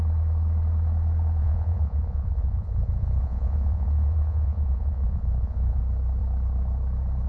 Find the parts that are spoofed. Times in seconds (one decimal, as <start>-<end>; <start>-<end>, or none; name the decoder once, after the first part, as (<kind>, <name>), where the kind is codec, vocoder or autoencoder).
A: 1.4-5.8 (vocoder, Vocos)